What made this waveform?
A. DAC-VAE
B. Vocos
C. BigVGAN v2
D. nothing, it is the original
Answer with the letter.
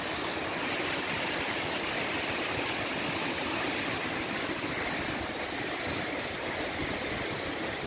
D